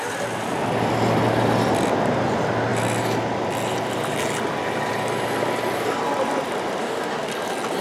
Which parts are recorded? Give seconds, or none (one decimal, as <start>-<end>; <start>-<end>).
0.0-6.8; 7.3-7.8